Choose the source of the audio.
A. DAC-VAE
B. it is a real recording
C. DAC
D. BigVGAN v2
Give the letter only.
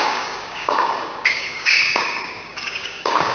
C